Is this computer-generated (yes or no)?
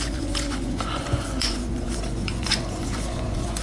yes